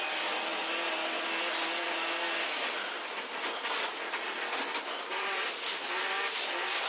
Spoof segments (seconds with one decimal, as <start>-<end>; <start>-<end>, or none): none